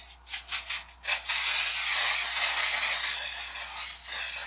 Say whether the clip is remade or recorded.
recorded